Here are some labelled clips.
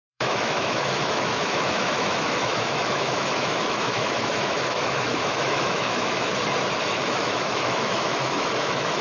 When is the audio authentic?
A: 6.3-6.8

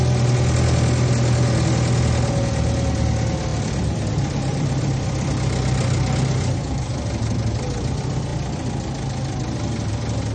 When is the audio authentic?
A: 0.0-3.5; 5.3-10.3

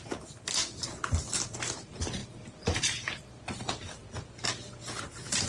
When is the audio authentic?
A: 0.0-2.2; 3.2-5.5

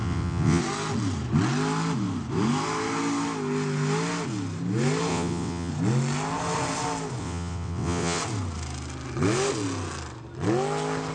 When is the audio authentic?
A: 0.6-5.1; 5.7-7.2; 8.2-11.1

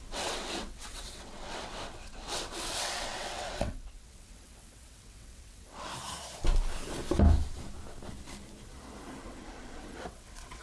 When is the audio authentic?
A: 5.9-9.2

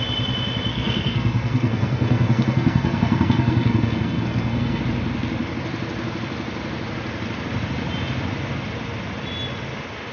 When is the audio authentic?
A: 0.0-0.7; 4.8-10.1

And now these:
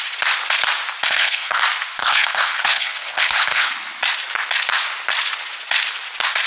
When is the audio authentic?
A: 0.0-1.1; 1.6-2.0; 3.7-6.5